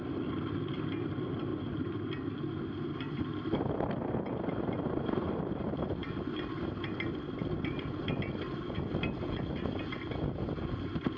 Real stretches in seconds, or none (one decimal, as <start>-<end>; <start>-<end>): 0.0-11.2